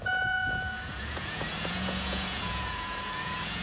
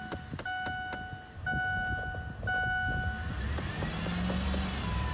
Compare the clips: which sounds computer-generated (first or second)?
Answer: first